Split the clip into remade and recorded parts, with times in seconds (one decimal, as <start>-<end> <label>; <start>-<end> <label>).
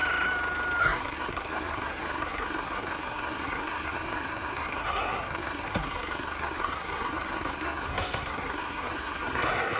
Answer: 0.0-0.8 recorded; 0.8-9.8 remade